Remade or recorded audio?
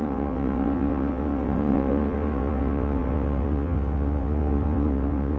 remade